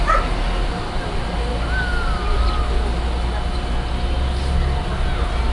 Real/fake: real